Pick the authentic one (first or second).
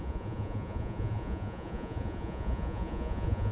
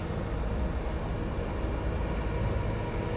second